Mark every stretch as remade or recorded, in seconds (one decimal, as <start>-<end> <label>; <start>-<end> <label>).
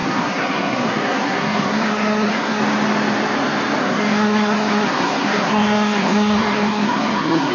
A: 0.0-2.6 remade; 2.6-3.8 recorded; 3.8-7.5 remade